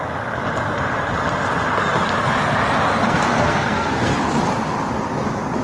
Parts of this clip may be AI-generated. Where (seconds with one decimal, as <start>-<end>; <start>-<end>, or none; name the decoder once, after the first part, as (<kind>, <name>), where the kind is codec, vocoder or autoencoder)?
3.0-4.2 (codec, SNAC)